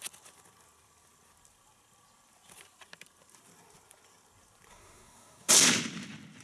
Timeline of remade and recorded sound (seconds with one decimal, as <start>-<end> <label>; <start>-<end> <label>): 0.0-4.7 recorded; 4.7-5.5 remade; 5.5-6.4 recorded